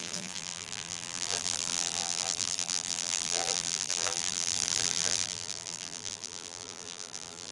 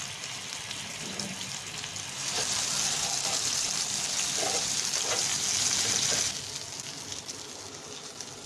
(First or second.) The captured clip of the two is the second